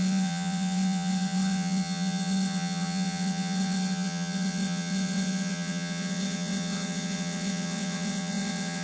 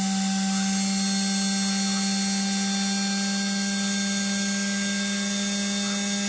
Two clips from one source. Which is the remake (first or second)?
first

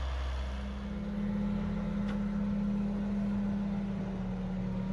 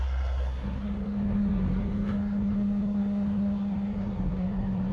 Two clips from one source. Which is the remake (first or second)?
second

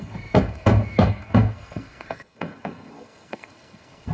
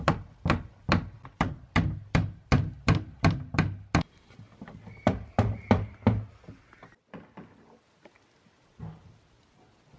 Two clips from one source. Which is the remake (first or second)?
first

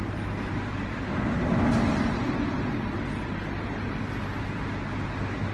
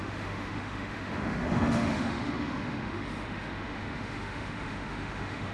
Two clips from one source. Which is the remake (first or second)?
second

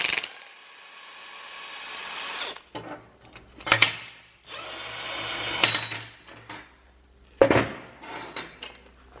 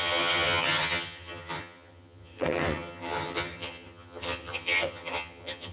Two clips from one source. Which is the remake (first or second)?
second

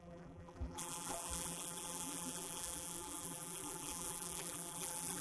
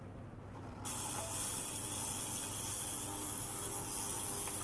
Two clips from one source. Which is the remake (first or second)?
first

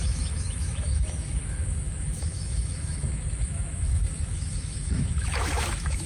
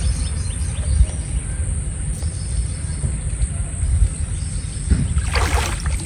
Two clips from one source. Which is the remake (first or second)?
first